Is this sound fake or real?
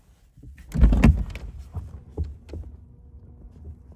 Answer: real